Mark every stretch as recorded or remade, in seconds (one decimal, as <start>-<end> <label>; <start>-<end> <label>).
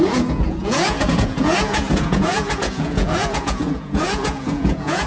0.0-5.1 remade